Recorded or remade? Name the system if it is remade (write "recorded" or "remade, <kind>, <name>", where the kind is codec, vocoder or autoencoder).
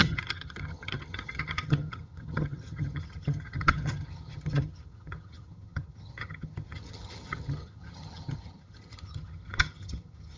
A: remade, vocoder, HiFi-GAN